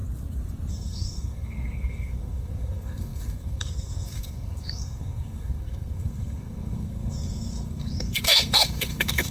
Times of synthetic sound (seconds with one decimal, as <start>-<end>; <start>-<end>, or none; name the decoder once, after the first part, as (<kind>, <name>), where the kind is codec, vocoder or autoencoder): 0.7-9.3 (codec, SNAC)